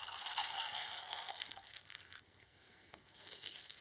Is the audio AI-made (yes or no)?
yes